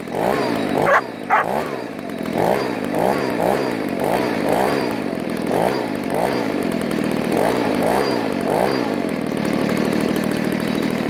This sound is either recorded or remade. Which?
remade